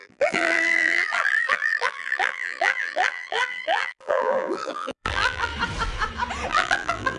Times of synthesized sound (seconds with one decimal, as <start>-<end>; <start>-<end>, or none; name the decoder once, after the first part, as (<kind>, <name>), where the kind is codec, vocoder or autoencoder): 0.0-5.5 (vocoder, BigVGAN v2); 6.5-7.2